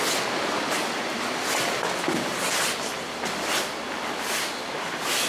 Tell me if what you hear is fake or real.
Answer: real